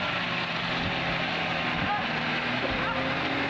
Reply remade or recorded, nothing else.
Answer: recorded